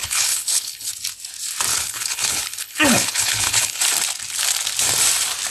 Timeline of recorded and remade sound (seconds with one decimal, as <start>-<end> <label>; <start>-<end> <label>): 0.0-0.9 remade; 0.9-1.7 recorded; 1.7-3.8 remade; 3.8-5.5 recorded